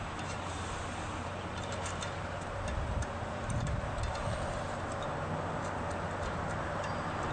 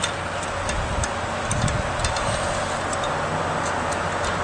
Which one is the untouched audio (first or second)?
second